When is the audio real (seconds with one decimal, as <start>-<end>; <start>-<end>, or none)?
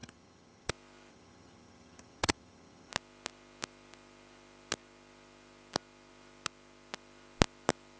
0.7-1.1; 2.9-8.0